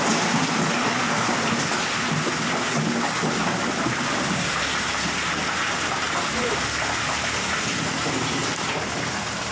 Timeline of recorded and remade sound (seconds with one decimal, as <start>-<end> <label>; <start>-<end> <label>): 0.0-3.4 recorded; 3.4-4.7 remade; 4.7-6.0 recorded; 6.0-6.6 remade; 6.6-8.4 recorded; 8.4-9.5 remade